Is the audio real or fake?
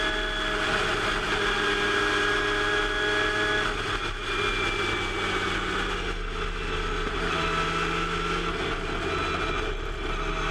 real